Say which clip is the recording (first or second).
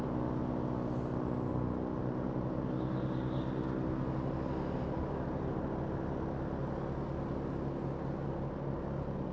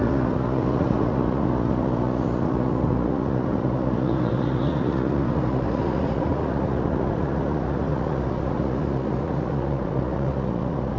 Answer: first